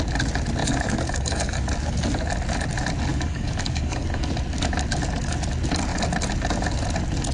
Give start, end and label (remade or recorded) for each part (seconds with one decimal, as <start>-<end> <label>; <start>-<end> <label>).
0.0-0.6 recorded; 0.6-2.3 remade; 2.3-3.1 recorded; 3.1-4.3 remade; 4.3-7.3 recorded